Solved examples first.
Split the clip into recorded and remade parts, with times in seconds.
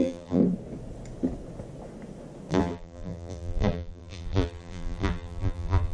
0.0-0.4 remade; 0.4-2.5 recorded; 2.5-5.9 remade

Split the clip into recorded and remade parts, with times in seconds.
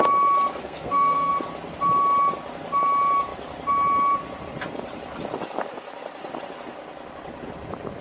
0.0-0.6 recorded; 0.6-1.3 remade; 1.3-8.0 recorded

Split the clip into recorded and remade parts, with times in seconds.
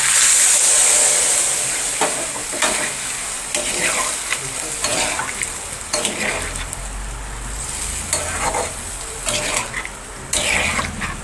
0.0-11.2 recorded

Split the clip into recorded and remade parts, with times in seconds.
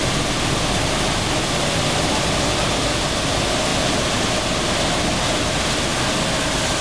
0.0-6.8 recorded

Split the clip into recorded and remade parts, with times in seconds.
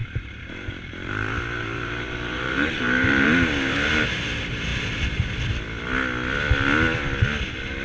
0.0-3.9 remade; 3.9-7.8 recorded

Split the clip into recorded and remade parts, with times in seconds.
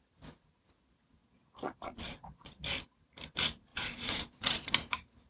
0.0-1.2 recorded; 1.2-2.6 remade; 2.6-3.7 recorded; 3.7-4.7 remade; 4.7-5.3 recorded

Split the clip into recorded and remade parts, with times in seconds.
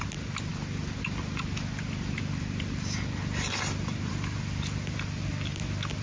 0.0-6.0 recorded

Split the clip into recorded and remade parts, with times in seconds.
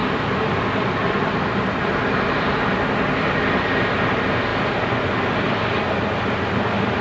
0.0-7.0 recorded